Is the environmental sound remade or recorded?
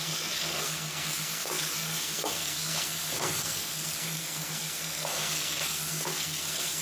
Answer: remade